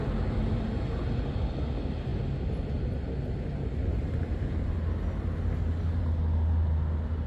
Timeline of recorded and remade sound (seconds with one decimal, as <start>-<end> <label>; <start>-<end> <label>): 0.0-7.3 recorded